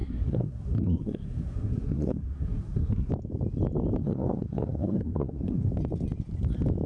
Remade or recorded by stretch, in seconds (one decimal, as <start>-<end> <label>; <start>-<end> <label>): 0.0-3.1 remade; 3.1-4.0 recorded; 4.0-5.7 remade; 5.7-6.9 recorded